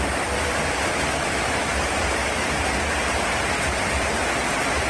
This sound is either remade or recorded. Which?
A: recorded